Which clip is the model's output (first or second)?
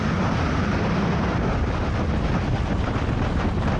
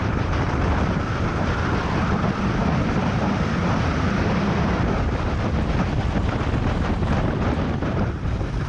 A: second